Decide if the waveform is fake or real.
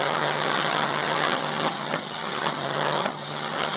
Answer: fake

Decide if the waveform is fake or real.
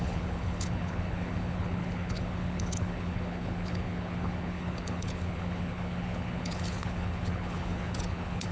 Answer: fake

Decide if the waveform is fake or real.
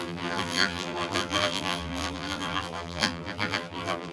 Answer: fake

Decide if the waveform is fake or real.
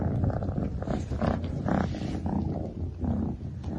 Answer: real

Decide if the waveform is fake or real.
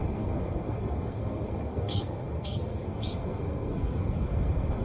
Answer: fake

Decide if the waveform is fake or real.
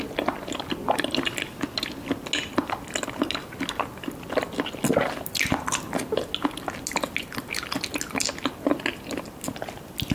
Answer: real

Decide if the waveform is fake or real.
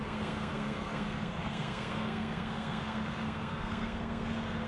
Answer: fake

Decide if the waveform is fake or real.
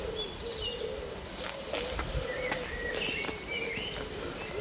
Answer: real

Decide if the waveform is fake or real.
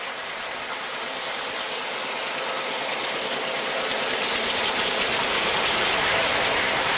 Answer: real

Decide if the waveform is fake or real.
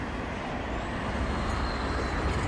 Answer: real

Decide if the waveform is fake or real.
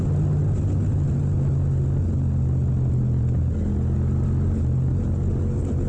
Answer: real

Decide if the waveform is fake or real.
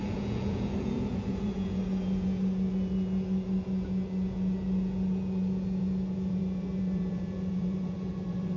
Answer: fake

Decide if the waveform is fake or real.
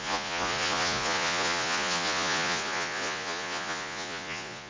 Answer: fake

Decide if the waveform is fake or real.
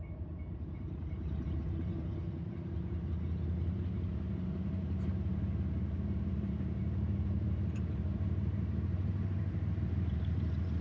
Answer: fake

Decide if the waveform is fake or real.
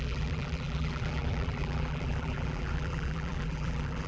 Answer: fake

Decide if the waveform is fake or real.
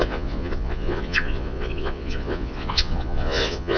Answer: fake